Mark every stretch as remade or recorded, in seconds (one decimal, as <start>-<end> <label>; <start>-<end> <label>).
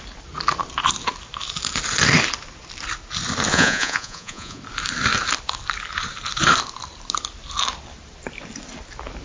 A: 0.0-3.5 recorded; 3.5-4.6 remade; 4.6-9.2 recorded